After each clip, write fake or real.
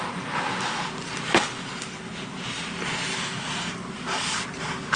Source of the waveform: real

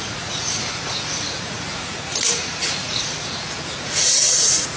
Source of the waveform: fake